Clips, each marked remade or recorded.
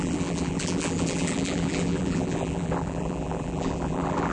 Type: remade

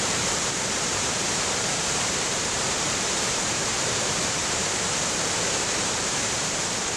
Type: remade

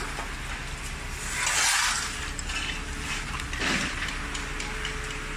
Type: recorded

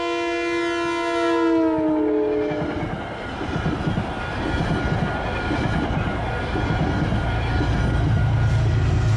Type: recorded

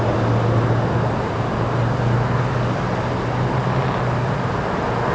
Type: recorded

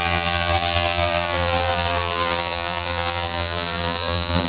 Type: remade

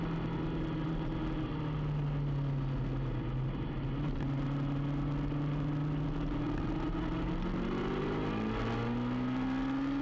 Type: recorded